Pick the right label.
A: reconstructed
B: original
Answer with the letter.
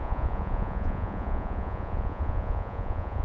A